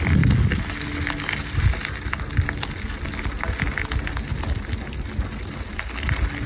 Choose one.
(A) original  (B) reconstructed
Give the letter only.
A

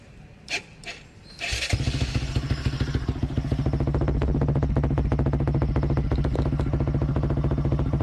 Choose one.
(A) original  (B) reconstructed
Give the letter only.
A